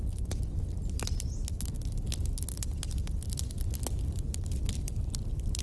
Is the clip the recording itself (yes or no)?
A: yes